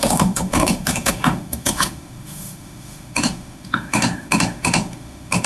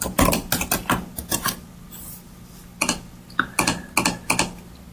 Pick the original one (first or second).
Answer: second